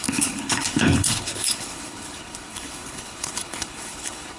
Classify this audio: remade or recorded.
remade